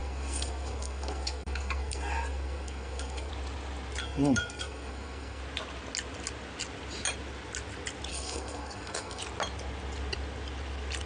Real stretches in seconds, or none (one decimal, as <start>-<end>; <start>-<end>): 3.3-4.0; 5.4-8.1; 9.2-11.1